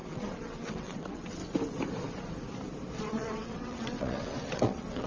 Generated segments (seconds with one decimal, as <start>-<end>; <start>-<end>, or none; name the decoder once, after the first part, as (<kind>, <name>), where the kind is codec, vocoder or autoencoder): 0.0-1.4 (vocoder, WaveNeXt); 3.0-5.1